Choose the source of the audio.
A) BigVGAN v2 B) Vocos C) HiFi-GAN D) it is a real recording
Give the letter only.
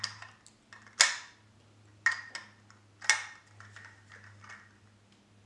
D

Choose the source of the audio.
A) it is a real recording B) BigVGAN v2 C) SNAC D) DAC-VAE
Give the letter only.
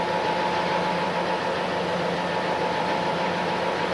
B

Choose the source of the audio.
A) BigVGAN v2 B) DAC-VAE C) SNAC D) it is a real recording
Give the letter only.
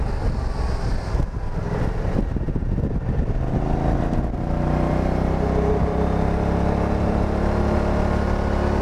D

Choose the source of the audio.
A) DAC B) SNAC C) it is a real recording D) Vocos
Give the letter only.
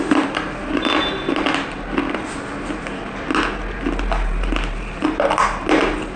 C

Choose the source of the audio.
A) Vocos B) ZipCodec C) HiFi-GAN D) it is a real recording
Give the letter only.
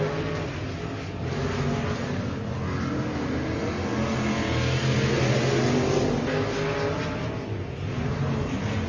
D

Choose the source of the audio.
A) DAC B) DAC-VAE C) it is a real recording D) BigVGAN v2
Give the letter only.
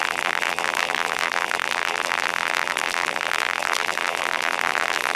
D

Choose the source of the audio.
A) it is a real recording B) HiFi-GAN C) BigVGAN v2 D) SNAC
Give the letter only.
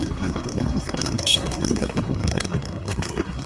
D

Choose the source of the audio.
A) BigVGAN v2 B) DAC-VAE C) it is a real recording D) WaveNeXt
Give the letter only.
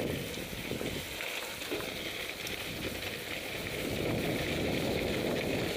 C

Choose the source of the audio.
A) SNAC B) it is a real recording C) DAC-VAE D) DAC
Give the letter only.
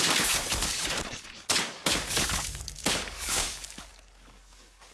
D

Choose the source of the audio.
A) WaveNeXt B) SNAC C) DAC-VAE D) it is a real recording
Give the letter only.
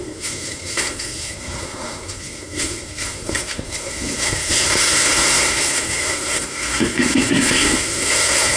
B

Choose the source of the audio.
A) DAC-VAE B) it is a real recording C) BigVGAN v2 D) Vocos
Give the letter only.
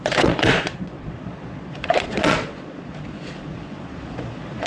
D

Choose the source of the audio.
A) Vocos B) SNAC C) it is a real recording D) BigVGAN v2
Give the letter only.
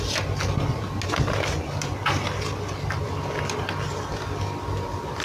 C